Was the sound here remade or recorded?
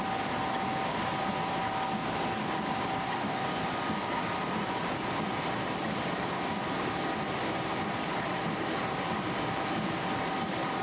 recorded